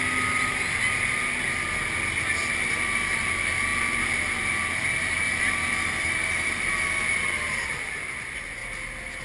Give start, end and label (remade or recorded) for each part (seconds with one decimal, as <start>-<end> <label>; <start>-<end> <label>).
0.0-9.2 recorded

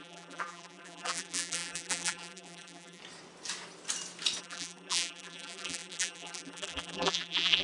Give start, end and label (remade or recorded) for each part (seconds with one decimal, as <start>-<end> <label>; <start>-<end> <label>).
0.0-3.0 remade; 3.0-4.4 recorded; 4.4-7.6 remade